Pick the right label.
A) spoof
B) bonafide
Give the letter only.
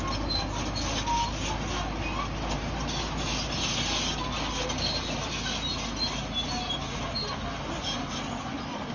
B